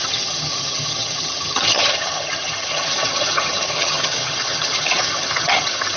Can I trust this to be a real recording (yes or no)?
no